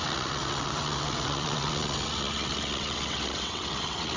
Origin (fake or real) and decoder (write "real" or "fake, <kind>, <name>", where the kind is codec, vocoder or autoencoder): fake, vocoder, WaveNeXt